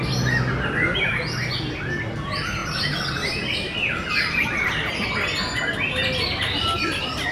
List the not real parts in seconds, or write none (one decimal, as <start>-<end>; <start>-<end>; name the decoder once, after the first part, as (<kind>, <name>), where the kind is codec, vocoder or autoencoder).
none